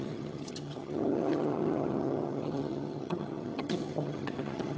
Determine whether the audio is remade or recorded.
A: remade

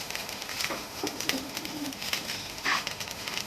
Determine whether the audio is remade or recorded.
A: remade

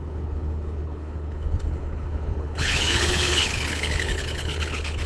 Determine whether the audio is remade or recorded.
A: remade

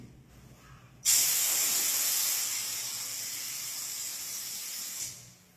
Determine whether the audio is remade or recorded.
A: recorded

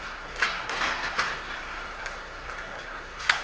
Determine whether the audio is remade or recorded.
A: remade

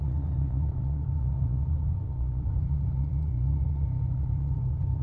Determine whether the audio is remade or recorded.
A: remade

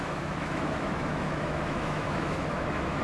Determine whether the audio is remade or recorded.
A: remade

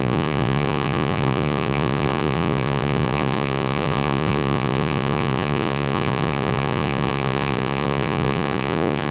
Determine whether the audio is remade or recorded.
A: remade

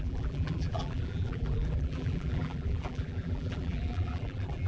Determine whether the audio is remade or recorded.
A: remade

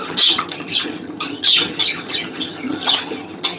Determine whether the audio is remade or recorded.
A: remade